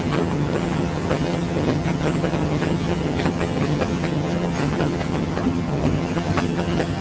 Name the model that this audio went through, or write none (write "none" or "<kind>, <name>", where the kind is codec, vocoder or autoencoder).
vocoder, HiFi-GAN